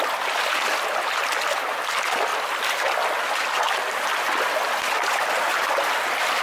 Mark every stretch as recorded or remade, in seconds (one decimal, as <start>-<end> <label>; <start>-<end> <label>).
0.0-2.3 recorded; 2.3-6.4 remade